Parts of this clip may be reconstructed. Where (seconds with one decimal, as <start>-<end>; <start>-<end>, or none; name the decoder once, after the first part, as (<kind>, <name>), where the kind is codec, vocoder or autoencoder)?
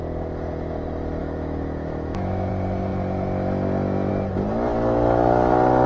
1.2-2.5 (autoencoder, DAC-VAE)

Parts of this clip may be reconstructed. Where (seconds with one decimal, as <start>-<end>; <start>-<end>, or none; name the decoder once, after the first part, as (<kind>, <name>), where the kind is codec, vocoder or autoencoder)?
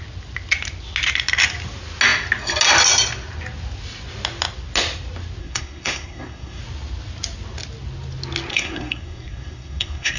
5.4-6.6 (codec, SNAC); 8.5-10.2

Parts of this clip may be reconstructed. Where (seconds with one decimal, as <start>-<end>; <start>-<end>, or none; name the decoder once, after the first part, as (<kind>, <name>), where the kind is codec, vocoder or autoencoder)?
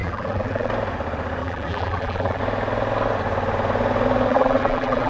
0.0-0.7 (vocoder, BigVGAN v2); 1.4-2.4; 4.3-5.1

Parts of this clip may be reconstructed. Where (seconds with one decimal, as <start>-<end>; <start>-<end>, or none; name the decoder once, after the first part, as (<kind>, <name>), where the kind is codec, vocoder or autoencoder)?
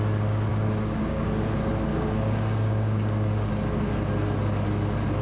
0.5-1.3 (codec, DAC); 1.9-3.5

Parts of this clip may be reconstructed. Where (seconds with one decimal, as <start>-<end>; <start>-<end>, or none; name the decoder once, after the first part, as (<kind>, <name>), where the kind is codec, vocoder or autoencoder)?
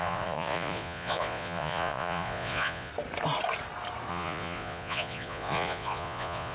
0.0-2.9 (vocoder, Vocos); 4.1-6.5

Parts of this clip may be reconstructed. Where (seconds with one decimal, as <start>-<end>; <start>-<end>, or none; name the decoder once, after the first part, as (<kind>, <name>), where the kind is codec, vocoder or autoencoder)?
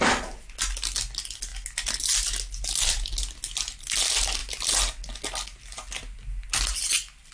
none